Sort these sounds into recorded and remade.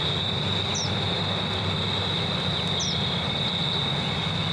recorded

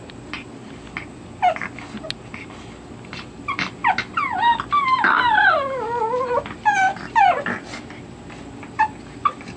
recorded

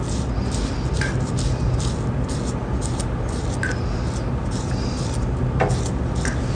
recorded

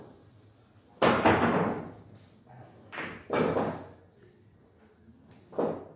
recorded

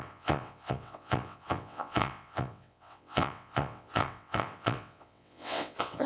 remade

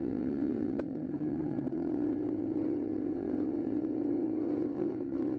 remade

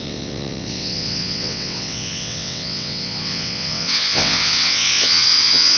remade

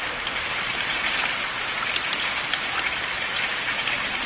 recorded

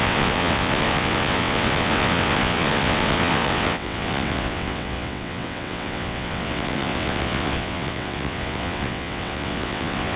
remade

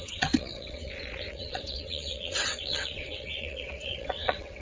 remade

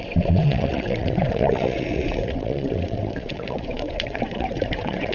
remade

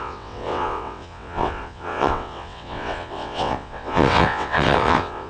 remade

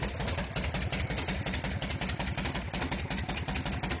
recorded